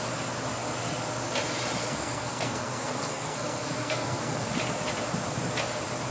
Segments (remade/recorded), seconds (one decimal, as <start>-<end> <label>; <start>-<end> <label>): 0.0-1.8 recorded; 1.8-4.5 remade; 4.5-6.1 recorded